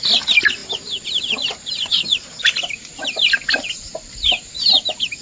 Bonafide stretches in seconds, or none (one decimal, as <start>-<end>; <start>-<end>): 0.0-5.2

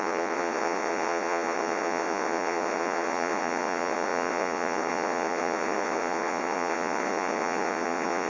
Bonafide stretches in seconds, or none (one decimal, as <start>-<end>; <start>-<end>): none

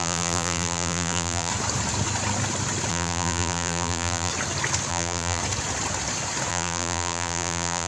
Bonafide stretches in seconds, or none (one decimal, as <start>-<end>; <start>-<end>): 1.5-2.9; 4.3-4.9; 5.4-6.5

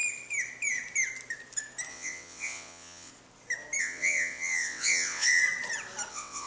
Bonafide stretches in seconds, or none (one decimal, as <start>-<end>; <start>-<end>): 0.0-1.9; 3.1-3.8; 5.4-6.1

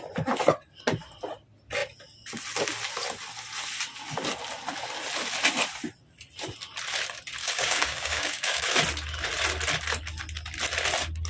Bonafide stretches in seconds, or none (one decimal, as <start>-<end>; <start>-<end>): 0.0-7.4; 8.7-11.3